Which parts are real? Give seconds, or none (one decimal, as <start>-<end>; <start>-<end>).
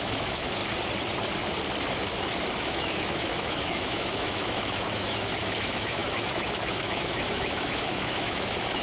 0.6-2.6